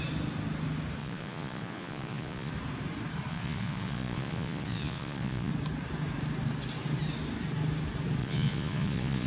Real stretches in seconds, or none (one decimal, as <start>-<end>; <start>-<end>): 0.0-1.0; 2.5-3.3; 5.5-8.2